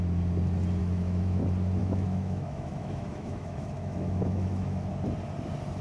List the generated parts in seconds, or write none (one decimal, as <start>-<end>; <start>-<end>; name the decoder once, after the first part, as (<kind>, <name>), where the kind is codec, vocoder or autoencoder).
0.8-1.4 (autoencoder, DAC-VAE); 1.8-4.9